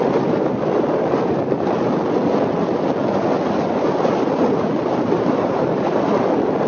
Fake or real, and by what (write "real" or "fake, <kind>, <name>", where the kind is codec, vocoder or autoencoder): real